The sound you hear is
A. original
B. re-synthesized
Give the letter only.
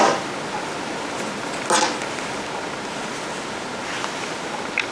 A